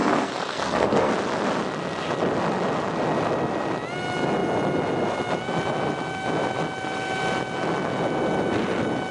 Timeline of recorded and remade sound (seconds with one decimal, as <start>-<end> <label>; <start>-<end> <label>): 0.0-1.1 remade; 1.1-9.1 recorded